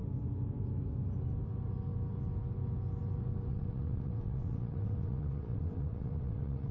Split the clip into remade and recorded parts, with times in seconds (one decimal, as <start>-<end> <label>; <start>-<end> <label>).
0.0-3.5 recorded; 3.5-6.7 remade